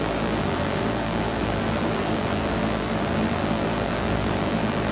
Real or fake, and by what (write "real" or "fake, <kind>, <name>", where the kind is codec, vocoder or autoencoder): fake, vocoder, BigVGAN v2